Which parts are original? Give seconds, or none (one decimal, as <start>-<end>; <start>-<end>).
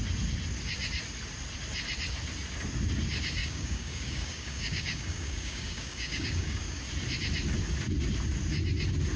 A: 0.0-3.4; 6.8-9.2